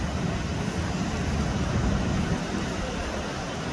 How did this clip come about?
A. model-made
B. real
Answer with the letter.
A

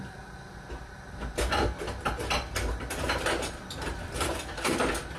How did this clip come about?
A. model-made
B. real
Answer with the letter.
B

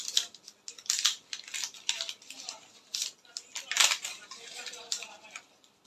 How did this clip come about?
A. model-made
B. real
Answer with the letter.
B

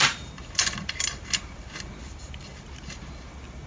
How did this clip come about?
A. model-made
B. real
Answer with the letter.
B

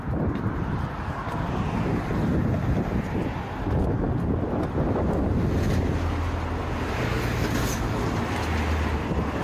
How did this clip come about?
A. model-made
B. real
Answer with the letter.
B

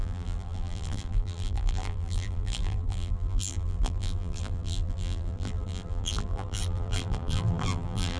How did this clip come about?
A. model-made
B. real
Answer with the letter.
A